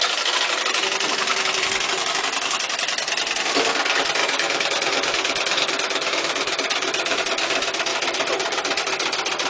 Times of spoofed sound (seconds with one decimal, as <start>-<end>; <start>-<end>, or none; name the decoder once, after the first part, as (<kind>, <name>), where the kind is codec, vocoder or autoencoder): 4.2-7.2 (autoencoder, DAC-VAE)